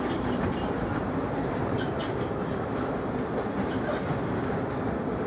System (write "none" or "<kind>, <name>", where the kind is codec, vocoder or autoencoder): none